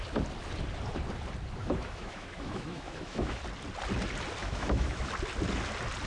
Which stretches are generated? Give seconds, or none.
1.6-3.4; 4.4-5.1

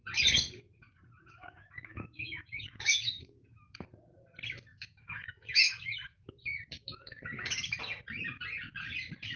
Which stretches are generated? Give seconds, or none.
1.2-3.8; 4.7-7.8

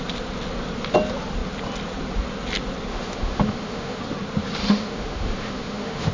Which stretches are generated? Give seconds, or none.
2.9-4.0; 4.6-6.1

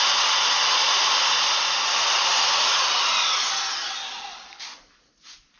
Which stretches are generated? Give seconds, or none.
2.3-2.8

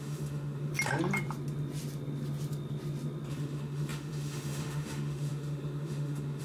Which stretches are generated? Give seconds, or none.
0.0-0.7; 3.3-6.4

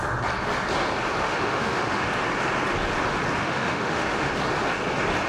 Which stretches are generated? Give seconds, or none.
1.2-2.1; 3.4-4.3